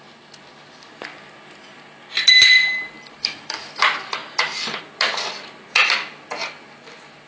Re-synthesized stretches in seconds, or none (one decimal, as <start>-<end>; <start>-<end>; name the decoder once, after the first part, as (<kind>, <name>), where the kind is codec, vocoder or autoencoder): 3.2-3.8 (autoencoder, DAC-VAE)